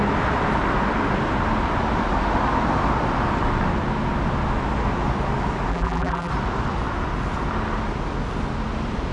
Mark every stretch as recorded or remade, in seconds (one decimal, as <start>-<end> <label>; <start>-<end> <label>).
0.0-5.7 recorded; 5.7-6.3 remade; 6.3-9.1 recorded